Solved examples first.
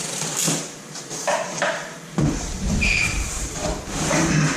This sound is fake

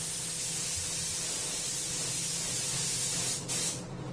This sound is real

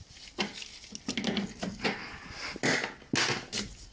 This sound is real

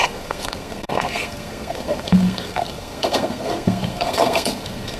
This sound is fake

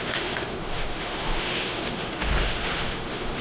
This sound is fake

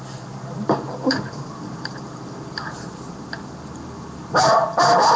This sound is real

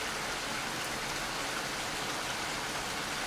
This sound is real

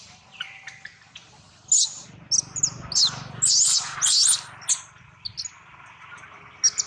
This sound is real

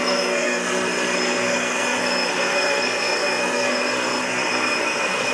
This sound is fake